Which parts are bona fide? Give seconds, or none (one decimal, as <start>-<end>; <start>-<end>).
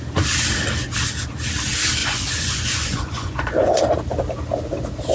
0.0-2.0; 3.8-5.1